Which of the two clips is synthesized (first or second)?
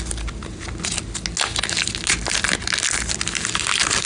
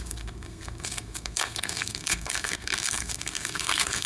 second